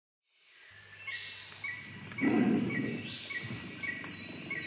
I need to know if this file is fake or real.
real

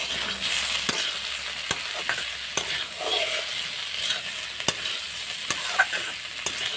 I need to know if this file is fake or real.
real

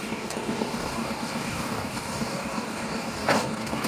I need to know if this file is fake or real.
fake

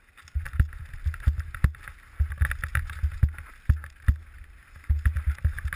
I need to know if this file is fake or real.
real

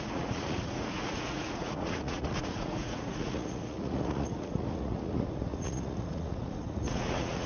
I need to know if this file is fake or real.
fake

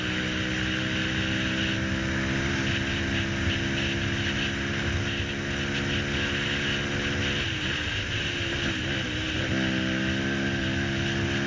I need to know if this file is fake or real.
real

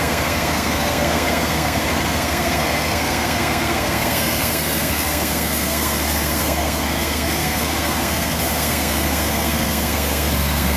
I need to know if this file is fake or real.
fake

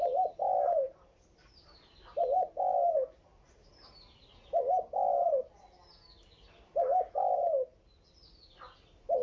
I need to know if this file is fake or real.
real